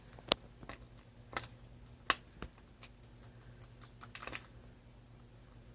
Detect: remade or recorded recorded